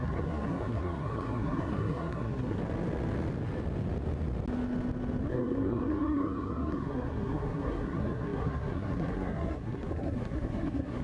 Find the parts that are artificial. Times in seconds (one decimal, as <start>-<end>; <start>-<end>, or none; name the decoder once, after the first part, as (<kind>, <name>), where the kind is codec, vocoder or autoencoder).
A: 0.0-2.6 (codec, SNAC); 5.3-11.0